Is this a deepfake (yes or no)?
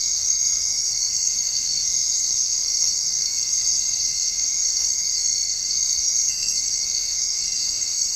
yes